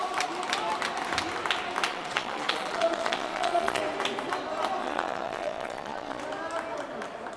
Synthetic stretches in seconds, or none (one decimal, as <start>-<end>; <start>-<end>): 1.9-3.8; 4.8-6.2